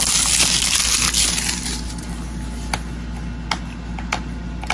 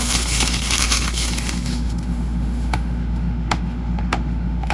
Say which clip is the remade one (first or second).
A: second